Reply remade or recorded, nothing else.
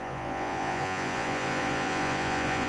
remade